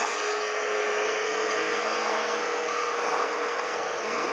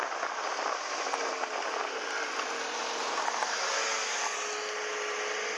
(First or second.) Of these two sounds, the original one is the second